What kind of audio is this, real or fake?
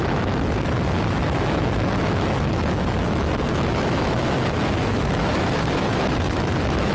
fake